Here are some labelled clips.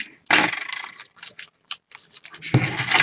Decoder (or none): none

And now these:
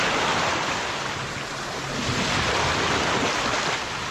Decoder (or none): none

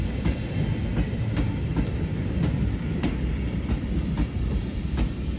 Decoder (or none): none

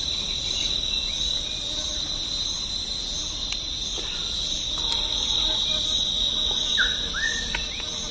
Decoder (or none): none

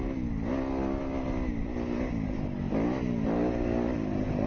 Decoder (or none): none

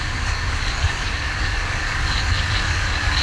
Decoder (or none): codec, DAC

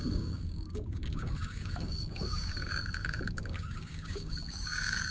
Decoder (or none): codec, DAC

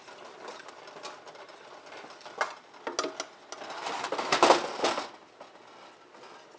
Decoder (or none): none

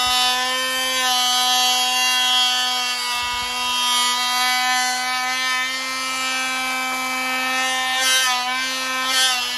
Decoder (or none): none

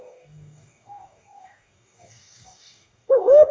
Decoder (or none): codec, DAC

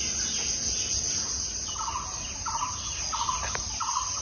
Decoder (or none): none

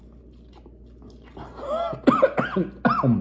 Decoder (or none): none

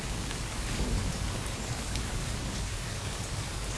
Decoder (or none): codec, DAC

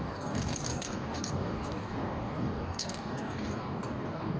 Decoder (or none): codec, DAC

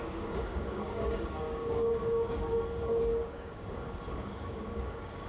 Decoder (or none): codec, DAC